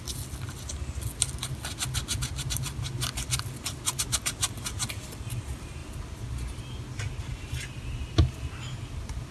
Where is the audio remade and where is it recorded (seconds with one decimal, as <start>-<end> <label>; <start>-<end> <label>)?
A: 0.0-9.3 recorded